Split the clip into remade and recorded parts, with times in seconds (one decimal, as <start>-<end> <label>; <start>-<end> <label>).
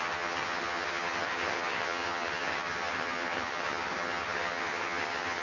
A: 0.0-5.4 remade